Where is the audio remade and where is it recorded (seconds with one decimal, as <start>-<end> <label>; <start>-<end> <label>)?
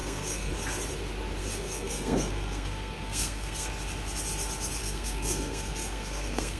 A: 0.0-0.5 remade; 0.5-1.4 recorded; 1.4-3.7 remade; 3.7-4.8 recorded; 4.8-6.6 remade